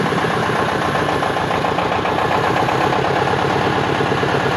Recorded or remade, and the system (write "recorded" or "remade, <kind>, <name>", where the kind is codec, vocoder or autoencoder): recorded